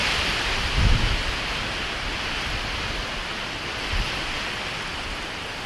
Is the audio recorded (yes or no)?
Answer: yes